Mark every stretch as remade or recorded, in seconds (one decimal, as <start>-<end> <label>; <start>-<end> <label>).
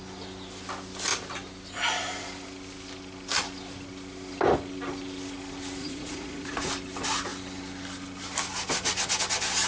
0.0-5.8 recorded; 5.8-6.7 remade; 6.7-9.7 recorded